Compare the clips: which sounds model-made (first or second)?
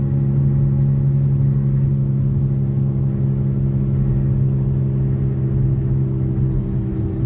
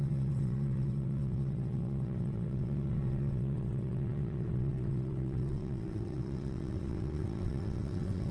second